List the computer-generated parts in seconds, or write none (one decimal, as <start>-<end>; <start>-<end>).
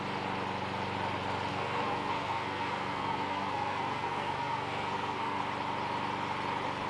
1.5-5.4